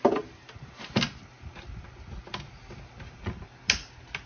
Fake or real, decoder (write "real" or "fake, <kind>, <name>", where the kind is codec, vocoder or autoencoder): real